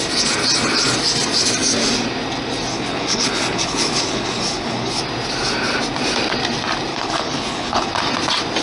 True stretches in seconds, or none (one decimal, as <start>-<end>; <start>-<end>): 0.0-2.7; 5.0-6.9; 7.9-8.6